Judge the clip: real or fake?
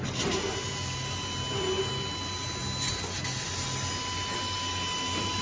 real